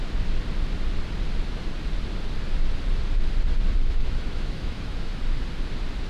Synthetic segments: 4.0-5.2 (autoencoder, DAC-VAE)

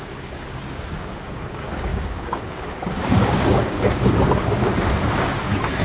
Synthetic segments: 0.0-5.8 (codec, DAC)

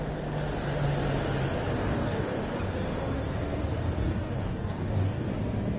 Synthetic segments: 1.8-2.6 (codec, DAC); 4.0-5.3

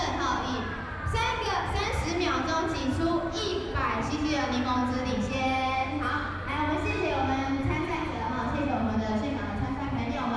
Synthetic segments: none

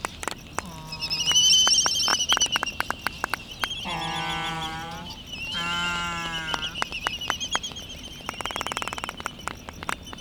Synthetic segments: 2.1-3.7 (vocoder, BigVGAN v2)

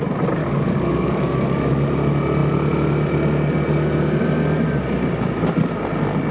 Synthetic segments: 0.4-1.7 (codec, DAC)

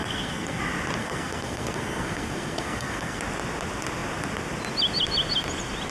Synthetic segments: 0.0-0.6 (codec, SNAC); 1.0-3.2

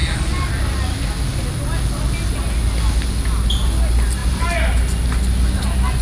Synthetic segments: none